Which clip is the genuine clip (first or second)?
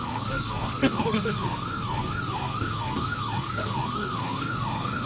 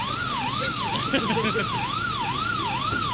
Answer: second